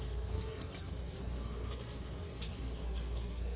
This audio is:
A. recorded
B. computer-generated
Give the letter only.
B